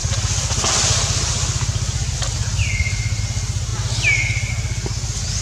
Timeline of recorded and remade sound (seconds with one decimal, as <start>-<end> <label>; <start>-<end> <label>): 0.0-5.4 recorded